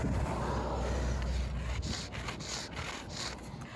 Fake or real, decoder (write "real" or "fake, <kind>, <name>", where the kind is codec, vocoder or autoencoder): real